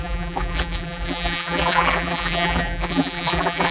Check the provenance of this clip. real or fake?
fake